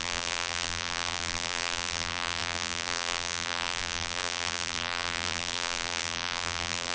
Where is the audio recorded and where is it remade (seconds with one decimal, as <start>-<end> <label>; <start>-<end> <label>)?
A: 0.0-6.9 remade